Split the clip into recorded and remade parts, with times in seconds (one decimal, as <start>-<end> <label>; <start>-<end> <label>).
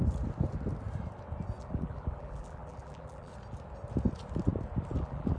0.0-1.6 recorded; 1.6-3.3 remade; 3.3-5.0 recorded; 5.0-5.4 remade